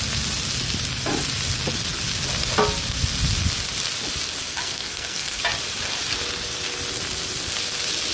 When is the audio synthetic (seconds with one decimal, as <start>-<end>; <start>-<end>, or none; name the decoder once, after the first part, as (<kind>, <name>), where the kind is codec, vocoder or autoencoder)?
4.4-5.4 (codec, SNAC)